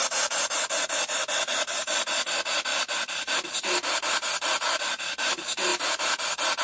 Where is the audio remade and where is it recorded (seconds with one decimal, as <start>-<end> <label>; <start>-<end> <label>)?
0.0-1.8 recorded; 1.8-2.3 remade; 2.3-6.6 recorded